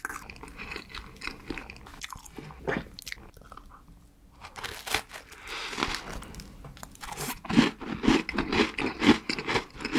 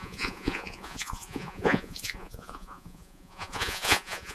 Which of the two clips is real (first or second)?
first